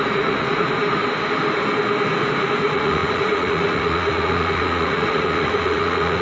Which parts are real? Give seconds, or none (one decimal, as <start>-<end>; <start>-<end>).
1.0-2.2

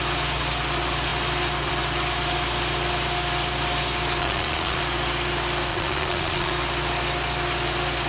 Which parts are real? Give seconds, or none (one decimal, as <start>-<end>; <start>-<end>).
0.0-4.2; 4.8-5.7; 6.5-8.1

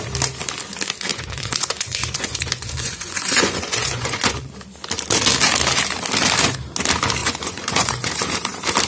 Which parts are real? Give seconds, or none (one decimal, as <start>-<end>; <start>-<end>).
0.0-1.1; 4.5-7.2; 8.1-8.9

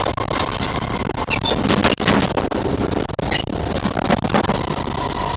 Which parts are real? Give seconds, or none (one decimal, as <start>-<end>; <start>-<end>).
0.0-5.4

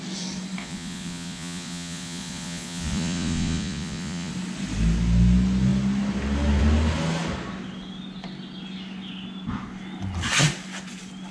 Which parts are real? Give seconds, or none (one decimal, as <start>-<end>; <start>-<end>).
0.0-0.6; 4.3-11.3

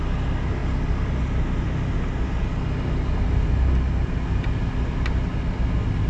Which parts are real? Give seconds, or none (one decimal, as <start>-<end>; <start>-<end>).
0.0-6.1